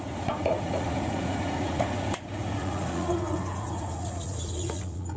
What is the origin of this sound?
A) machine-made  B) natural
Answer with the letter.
A